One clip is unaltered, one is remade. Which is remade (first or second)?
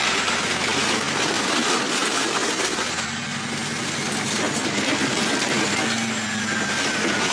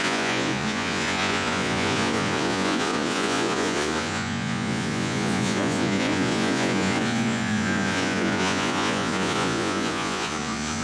second